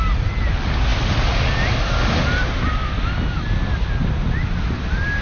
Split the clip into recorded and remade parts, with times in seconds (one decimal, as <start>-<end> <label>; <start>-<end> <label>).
0.0-5.2 recorded